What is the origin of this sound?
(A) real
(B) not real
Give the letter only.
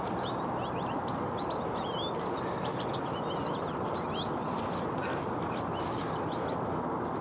A